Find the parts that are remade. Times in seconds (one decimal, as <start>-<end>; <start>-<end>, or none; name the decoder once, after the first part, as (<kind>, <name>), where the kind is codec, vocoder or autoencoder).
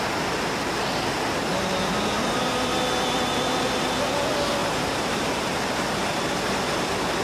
4.6-5.6 (vocoder, BigVGAN v2)